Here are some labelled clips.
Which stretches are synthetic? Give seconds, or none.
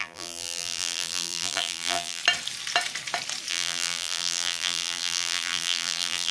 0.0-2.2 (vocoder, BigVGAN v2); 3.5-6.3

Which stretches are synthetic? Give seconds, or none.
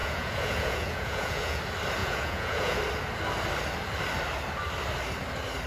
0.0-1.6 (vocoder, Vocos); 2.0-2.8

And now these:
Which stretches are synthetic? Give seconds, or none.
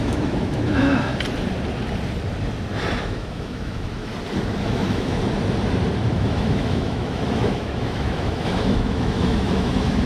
0.0-1.1 (autoencoder, DAC-VAE); 3.0-4.1; 4.6-5.2; 6.1-10.1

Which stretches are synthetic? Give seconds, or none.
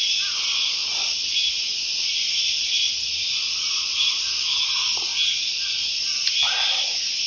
0.8-4.3 (vocoder, BigVGAN v2)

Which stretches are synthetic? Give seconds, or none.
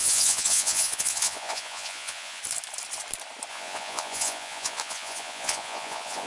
0.0-2.4 (vocoder, Vocos); 3.5-6.3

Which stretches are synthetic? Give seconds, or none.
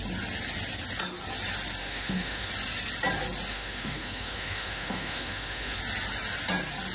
1.8-2.5 (autoencoder, DAC-VAE); 3.5-5.8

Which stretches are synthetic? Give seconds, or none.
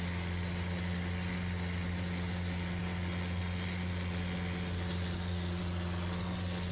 none